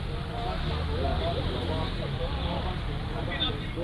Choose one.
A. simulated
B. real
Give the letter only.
B